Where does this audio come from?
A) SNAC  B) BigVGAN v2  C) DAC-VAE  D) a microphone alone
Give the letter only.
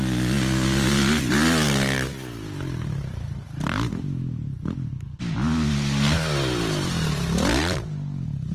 D